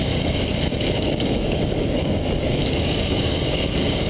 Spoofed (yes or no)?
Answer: yes